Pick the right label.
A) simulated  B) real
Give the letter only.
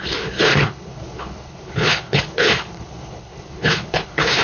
A